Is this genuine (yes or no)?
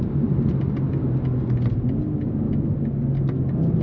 yes